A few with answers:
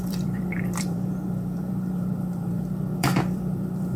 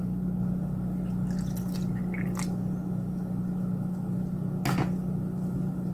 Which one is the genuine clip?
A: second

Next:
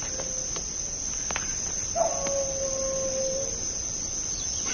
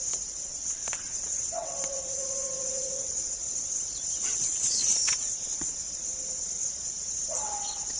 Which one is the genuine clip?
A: first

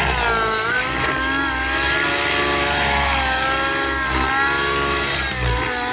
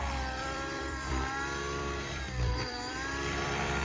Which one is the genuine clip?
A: first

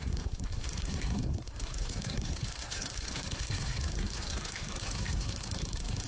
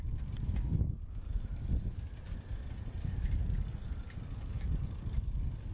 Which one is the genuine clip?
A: second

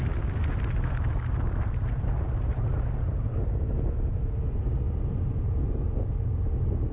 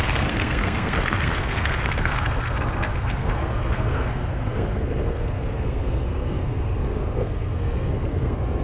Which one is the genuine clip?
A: first